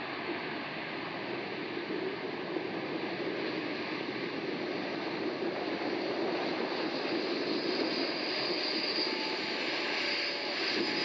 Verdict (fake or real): real